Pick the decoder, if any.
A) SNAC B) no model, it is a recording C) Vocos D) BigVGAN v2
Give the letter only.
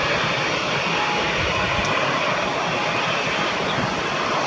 B